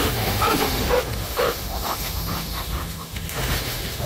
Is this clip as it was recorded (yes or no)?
no